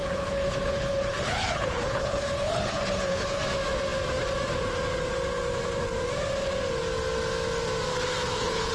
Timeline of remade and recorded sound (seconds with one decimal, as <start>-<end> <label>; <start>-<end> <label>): 0.0-3.4 remade; 3.4-7.9 recorded; 7.9-8.7 remade